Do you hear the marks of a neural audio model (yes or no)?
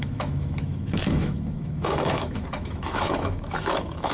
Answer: yes